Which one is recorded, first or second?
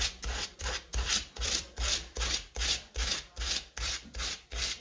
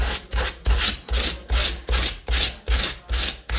second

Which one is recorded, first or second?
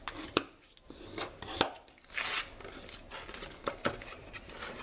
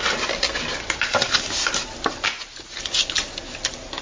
second